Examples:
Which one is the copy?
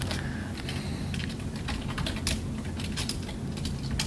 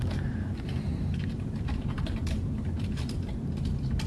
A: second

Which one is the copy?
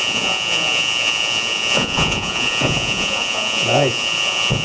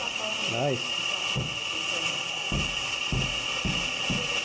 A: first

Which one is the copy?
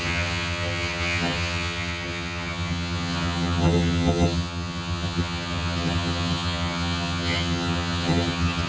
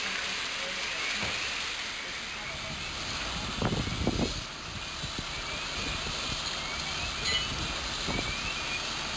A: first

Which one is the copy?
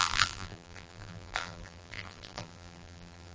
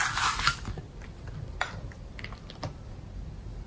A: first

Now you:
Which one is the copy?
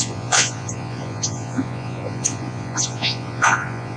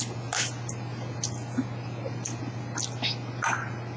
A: first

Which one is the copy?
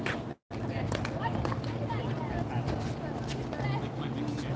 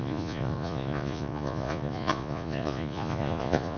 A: second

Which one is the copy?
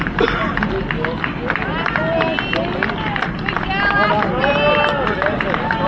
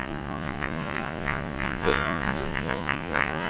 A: second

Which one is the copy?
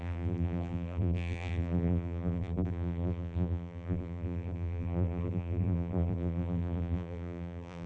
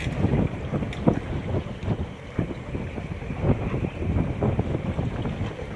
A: first